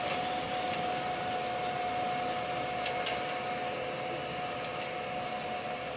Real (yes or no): yes